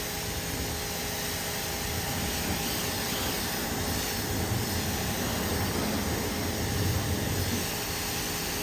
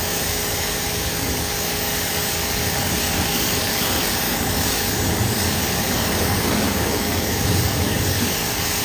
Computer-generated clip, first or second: second